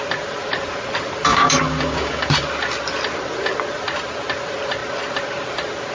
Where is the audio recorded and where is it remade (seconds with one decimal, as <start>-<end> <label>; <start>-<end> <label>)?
0.0-1.3 recorded; 1.3-2.3 remade; 2.3-5.9 recorded